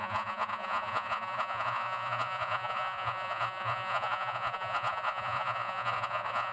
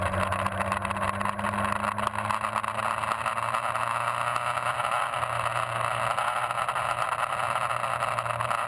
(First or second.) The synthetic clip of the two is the first